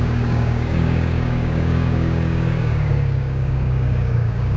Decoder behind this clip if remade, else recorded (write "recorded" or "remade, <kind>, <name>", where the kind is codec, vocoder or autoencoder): remade, codec, DAC